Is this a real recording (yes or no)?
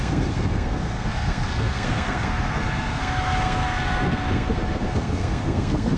no